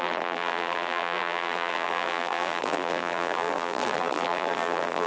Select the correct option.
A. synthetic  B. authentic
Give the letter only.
A